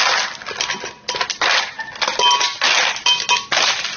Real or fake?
real